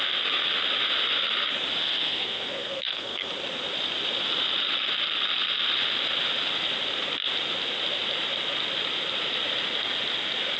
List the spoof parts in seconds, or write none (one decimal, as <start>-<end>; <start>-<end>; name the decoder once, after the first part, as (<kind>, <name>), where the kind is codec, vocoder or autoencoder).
1.8-3.3 (codec, SNAC)